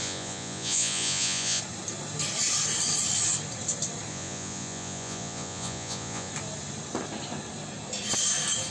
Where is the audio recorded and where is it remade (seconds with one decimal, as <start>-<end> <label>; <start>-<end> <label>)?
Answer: 0.0-1.6 remade; 1.6-4.1 recorded; 4.1-6.3 remade; 6.3-8.7 recorded

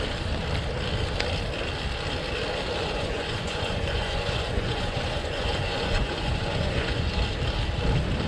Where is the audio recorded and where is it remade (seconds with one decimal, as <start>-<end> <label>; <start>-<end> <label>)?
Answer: 0.0-2.8 recorded; 2.8-7.1 remade; 7.1-8.3 recorded